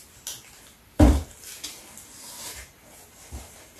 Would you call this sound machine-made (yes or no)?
no